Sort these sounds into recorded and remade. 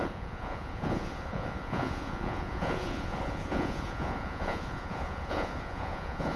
remade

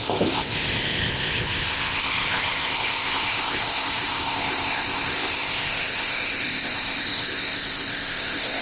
remade